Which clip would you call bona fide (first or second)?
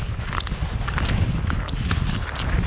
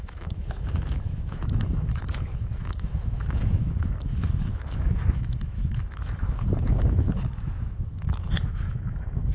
first